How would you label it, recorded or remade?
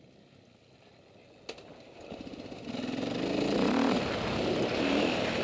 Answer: recorded